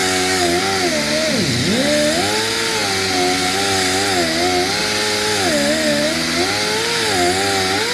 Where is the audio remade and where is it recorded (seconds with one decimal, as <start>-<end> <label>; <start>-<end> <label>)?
0.0-0.6 remade; 0.6-7.9 recorded